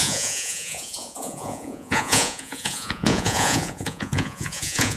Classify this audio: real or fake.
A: fake